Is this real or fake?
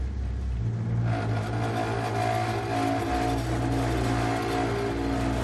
real